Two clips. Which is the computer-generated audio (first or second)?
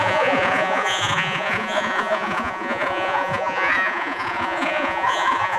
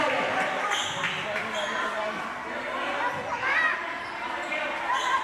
first